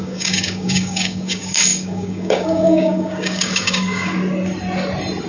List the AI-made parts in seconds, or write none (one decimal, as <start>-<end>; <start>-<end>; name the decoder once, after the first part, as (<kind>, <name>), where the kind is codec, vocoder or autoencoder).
0.0-4.2 (codec, DAC)